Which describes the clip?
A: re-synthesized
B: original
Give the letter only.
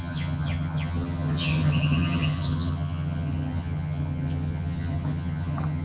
A